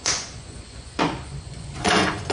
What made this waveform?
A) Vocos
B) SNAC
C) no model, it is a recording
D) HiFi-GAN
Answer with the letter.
A